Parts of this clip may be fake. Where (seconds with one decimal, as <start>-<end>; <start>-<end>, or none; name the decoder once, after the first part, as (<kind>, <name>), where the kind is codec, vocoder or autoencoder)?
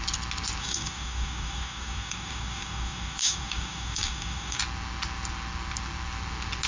0.6-4.6 (codec, DAC)